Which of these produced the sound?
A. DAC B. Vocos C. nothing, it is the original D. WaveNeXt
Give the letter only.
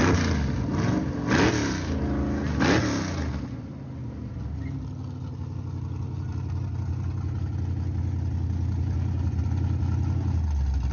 C